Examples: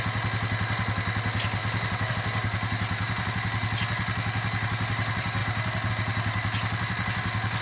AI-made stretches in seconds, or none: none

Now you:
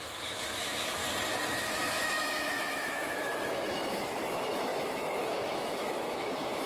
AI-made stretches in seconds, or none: 0.0-1.0 (autoencoder, DAC-VAE); 1.6-6.7

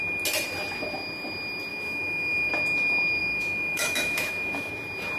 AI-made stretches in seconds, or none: 1.7-2.5 (autoencoder, DAC-VAE); 3.2-4.7

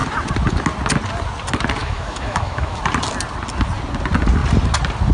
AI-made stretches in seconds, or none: 1.8-2.8 (autoencoder, DAC-VAE)

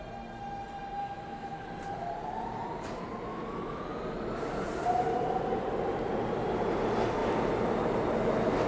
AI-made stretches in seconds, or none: 1.0-1.7 (autoencoder, DAC-VAE); 3.3-3.8

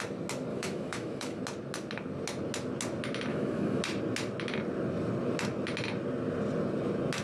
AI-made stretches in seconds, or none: 0.5-1.4 (autoencoder, DAC-VAE); 3.3-3.8

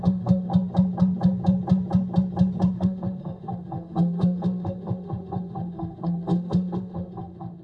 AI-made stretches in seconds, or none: 0.0-0.5 (autoencoder, DAC-VAE); 2.7-7.6